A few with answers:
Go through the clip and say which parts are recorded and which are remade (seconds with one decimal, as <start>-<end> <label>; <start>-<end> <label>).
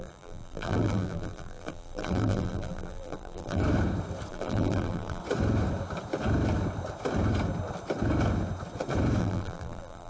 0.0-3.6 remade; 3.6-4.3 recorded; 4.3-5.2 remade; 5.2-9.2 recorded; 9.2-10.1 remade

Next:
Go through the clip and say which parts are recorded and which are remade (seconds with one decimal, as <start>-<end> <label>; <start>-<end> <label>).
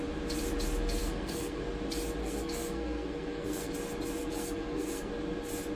0.0-1.0 recorded; 1.0-1.6 remade; 1.6-2.2 recorded; 2.2-3.7 remade; 3.7-4.2 recorded; 4.2-5.1 remade; 5.1-5.8 recorded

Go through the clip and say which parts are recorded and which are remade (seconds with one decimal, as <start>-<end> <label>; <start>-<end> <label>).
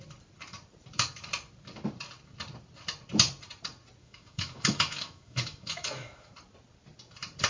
0.0-4.0 recorded; 4.0-6.3 remade; 6.3-7.5 recorded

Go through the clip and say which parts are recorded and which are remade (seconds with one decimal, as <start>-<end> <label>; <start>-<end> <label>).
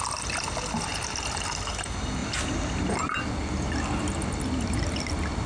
0.0-5.5 recorded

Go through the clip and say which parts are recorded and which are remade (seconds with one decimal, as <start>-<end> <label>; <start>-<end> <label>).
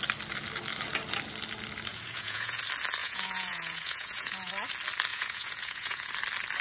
0.0-1.9 recorded; 1.9-2.6 remade; 2.6-3.0 recorded; 3.0-4.5 remade; 4.5-5.1 recorded; 5.1-6.1 remade; 6.1-6.6 recorded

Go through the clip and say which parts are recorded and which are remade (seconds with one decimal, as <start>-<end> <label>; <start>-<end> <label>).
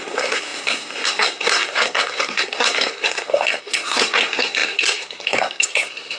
0.0-6.2 remade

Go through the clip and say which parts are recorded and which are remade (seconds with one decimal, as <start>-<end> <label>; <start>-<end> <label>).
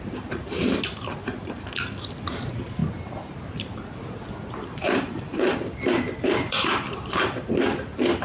0.0-0.6 remade; 0.6-1.2 recorded; 1.2-2.8 remade; 2.8-4.5 recorded; 4.5-8.2 remade